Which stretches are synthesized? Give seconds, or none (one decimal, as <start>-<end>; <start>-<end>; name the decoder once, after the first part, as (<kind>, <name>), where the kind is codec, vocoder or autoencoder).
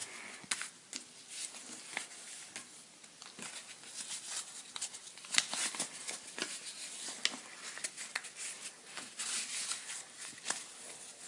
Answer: 0.0-0.5 (vocoder, Vocos)